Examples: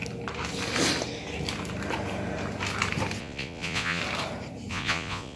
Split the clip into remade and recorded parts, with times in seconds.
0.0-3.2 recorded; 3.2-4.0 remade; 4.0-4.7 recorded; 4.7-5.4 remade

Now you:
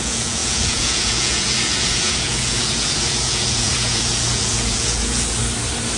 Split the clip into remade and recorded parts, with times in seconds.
0.0-5.4 remade; 5.4-6.0 recorded

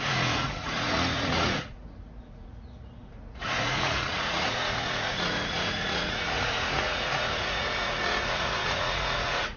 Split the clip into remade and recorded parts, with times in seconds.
0.0-9.6 remade